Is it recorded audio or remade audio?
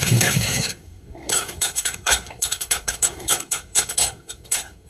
remade